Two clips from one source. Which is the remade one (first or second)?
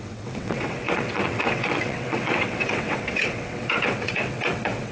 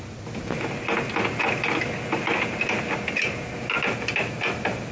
first